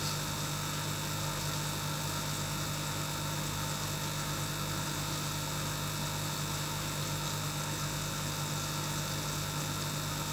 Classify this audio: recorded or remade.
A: recorded